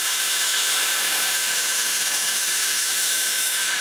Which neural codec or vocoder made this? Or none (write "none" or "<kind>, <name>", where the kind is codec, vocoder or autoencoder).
autoencoder, DAC-VAE